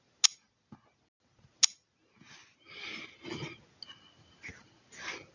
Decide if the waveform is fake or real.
real